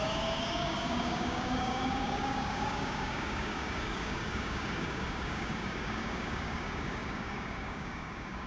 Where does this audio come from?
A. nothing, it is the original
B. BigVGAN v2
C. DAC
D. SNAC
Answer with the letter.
C